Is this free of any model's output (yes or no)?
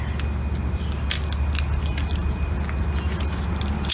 yes